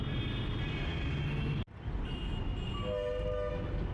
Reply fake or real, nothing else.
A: real